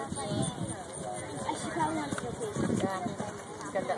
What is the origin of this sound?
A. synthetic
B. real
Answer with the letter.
B